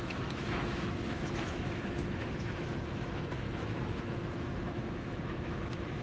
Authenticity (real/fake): fake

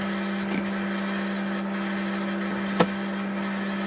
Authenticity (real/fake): real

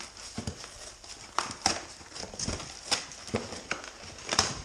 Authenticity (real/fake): fake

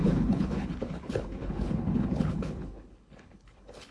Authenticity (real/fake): fake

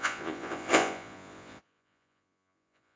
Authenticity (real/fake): fake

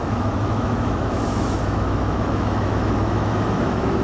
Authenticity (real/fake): fake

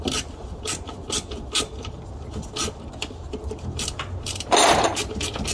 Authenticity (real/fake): fake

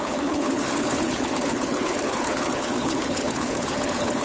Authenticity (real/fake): fake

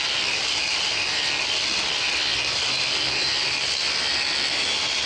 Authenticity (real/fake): real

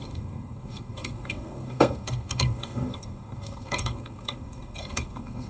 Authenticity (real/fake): fake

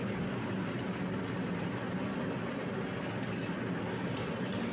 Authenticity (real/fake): real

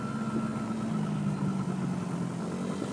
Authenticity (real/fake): real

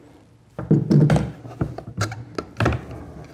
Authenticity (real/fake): real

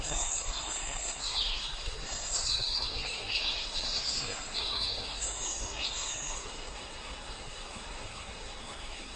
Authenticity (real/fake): fake